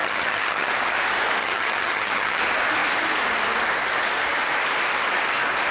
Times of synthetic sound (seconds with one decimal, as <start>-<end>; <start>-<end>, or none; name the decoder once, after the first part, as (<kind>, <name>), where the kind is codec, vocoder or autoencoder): 0.0-0.7 (vocoder, HiFi-GAN); 1.4-2.4